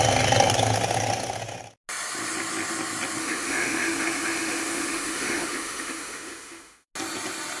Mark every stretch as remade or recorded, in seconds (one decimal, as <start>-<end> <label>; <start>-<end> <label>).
0.0-3.2 recorded; 3.2-6.9 remade; 6.9-7.6 recorded